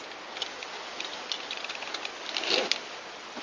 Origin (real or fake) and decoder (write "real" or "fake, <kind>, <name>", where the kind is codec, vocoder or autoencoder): real